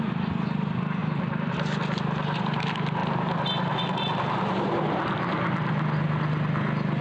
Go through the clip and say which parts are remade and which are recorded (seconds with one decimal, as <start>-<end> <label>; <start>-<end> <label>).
0.0-1.0 recorded; 1.0-1.5 remade; 1.5-3.0 recorded; 3.0-4.7 remade; 4.7-7.0 recorded